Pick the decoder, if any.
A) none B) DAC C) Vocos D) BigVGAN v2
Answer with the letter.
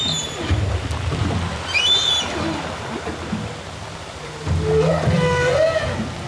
A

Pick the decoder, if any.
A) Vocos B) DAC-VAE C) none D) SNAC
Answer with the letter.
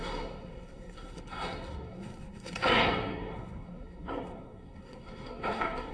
D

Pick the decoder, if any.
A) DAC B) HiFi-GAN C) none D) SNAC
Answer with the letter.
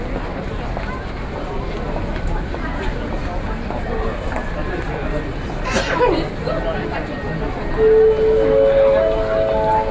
C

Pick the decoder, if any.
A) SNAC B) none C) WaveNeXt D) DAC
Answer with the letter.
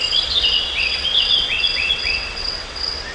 C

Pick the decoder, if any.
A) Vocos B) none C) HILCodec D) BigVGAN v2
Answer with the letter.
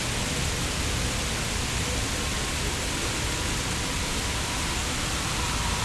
B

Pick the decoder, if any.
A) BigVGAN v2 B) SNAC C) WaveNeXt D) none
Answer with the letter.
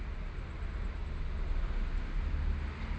D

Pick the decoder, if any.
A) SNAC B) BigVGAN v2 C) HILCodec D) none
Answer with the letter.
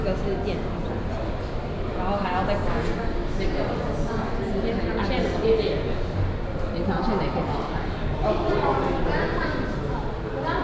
D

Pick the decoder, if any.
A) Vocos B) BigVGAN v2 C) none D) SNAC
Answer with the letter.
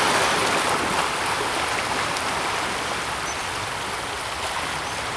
C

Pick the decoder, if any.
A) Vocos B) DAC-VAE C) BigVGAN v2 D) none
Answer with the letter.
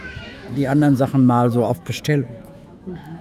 B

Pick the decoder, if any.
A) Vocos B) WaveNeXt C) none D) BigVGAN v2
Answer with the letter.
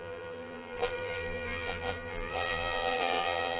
D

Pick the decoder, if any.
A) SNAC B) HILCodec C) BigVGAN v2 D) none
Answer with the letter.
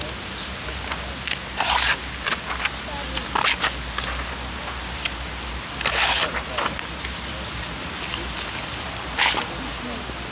D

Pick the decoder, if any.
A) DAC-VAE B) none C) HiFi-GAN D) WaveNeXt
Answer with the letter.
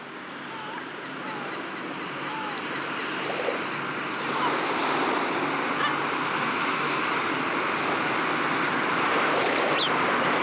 B